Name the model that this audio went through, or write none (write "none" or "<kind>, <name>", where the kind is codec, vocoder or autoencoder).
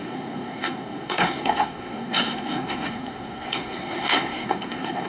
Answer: codec, SNAC